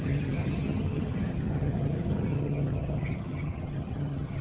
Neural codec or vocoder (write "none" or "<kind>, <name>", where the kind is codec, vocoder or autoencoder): vocoder, HiFi-GAN